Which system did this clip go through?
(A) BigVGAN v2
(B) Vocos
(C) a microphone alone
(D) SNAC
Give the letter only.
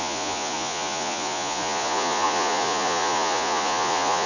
B